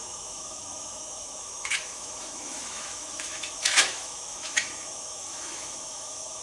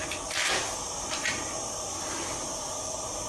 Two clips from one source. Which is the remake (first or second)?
first